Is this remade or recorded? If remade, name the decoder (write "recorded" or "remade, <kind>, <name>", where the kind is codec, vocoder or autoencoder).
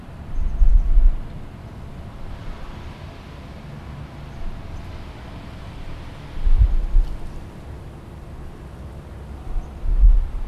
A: recorded